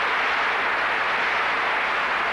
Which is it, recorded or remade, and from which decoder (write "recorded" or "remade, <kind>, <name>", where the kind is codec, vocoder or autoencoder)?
recorded